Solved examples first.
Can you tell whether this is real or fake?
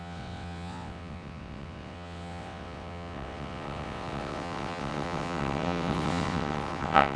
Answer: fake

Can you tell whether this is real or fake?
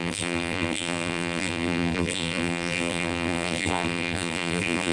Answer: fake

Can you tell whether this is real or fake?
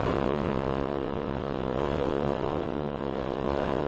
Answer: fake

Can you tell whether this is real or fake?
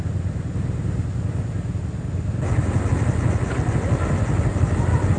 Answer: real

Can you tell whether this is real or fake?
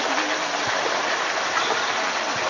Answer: real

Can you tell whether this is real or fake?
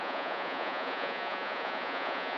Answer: fake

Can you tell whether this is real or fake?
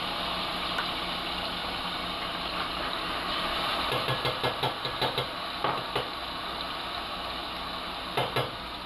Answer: real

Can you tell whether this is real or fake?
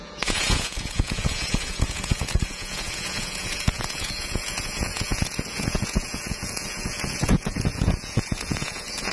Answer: fake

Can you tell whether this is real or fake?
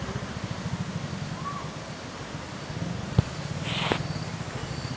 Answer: real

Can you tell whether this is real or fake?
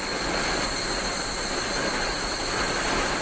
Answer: real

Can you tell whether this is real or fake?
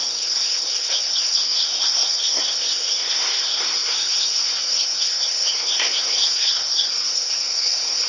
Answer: fake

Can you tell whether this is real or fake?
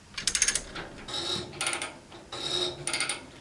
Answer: real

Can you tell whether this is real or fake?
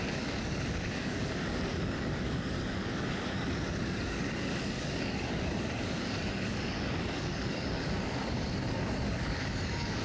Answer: fake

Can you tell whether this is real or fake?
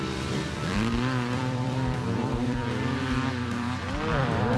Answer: fake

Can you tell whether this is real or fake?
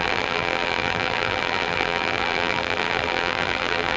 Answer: fake